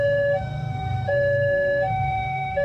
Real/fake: fake